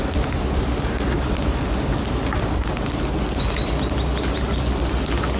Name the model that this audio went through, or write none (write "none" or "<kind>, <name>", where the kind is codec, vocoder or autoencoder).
none